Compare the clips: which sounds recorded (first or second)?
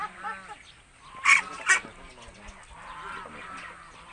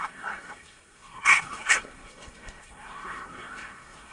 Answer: first